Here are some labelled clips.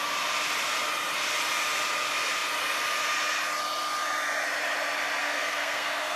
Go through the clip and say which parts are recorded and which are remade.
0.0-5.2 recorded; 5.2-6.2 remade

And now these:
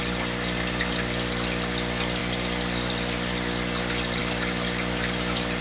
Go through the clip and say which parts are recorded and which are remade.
0.0-5.6 recorded

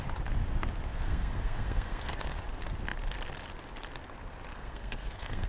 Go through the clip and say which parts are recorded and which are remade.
0.0-0.9 recorded; 0.9-2.4 remade; 2.4-4.5 recorded; 4.5-5.5 remade

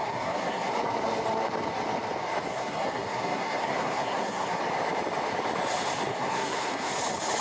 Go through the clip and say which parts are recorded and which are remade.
0.0-0.7 remade; 0.7-2.5 recorded; 2.5-4.6 remade; 4.6-6.1 recorded; 6.1-6.9 remade; 6.9-7.4 recorded